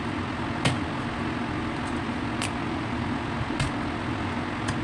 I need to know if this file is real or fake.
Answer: real